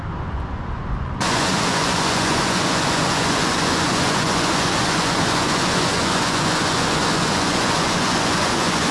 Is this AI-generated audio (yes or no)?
yes